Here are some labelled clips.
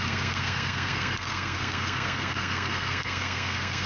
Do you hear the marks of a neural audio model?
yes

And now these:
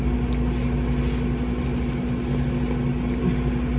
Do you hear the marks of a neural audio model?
no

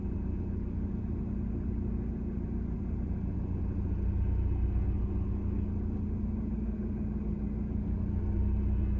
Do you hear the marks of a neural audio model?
no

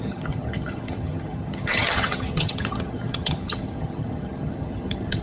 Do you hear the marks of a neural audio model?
yes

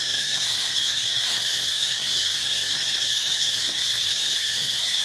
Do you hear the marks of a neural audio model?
yes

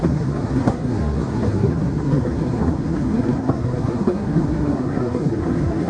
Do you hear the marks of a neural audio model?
yes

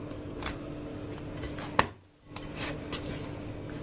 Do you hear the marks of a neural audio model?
no